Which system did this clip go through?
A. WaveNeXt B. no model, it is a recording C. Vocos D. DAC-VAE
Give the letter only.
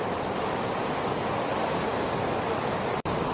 B